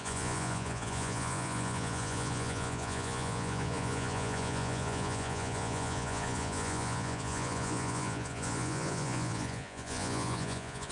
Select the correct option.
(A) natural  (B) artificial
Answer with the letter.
B